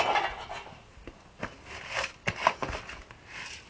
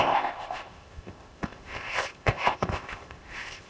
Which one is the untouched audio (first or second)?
first